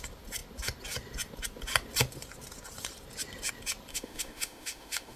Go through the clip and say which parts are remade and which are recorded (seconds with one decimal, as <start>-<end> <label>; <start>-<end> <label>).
0.0-3.9 recorded; 3.9-5.2 remade